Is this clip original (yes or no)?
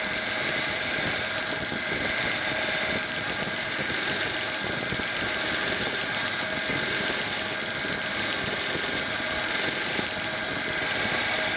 yes